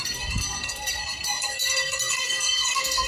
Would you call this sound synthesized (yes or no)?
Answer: yes